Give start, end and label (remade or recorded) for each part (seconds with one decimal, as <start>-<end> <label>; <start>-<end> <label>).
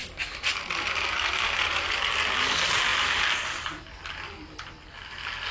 0.0-5.5 recorded